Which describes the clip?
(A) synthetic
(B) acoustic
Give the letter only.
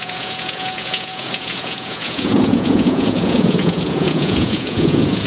A